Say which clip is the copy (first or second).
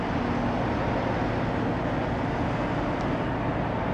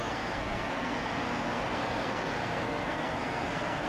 second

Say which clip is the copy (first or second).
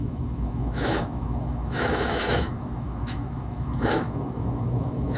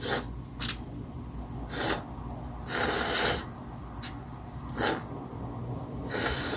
first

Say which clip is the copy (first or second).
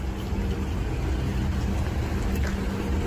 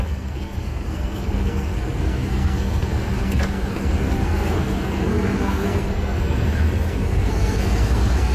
second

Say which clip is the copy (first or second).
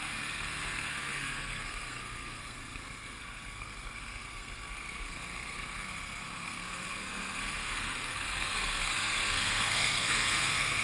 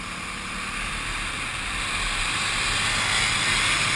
first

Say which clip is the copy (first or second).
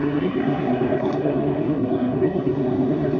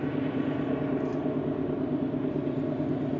first